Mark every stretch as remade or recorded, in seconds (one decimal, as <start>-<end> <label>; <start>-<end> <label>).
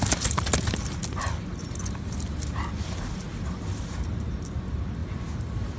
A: 0.0-5.8 recorded